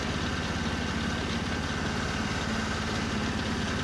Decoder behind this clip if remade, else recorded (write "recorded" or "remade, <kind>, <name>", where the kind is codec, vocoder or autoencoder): recorded